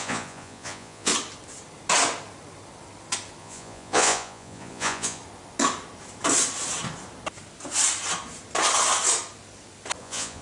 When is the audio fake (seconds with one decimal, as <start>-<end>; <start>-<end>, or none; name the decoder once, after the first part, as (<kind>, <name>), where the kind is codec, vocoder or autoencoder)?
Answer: 0.0-1.1 (vocoder, Vocos); 3.4-5.2; 10.0-10.4